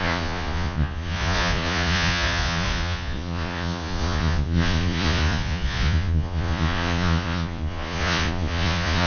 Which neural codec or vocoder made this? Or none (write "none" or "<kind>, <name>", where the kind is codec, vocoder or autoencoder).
vocoder, Vocos